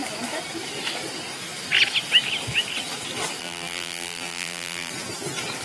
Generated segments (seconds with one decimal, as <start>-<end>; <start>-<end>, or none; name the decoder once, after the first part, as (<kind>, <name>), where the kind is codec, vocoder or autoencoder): 3.4-4.9 (vocoder, BigVGAN v2)